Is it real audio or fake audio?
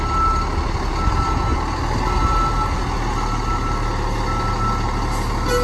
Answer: real